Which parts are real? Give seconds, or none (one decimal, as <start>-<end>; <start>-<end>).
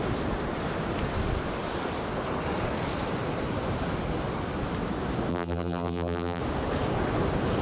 0.0-5.3; 6.4-7.6